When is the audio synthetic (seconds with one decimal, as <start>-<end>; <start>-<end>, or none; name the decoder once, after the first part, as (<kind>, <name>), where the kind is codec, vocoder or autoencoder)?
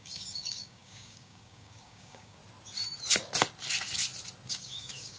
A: 0.0-2.4 (codec, DAC); 4.5-5.2